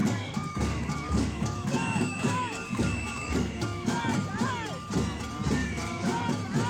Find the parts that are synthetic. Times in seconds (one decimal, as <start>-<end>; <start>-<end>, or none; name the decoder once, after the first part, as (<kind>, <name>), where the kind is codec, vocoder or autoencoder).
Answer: 0.0-4.0 (codec, DAC); 5.6-6.2